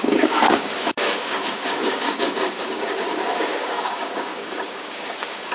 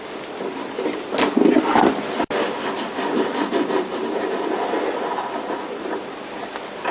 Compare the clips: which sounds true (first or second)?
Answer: second